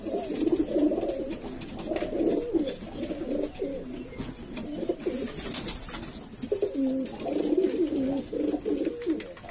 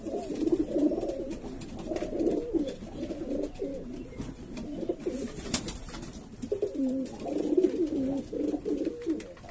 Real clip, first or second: first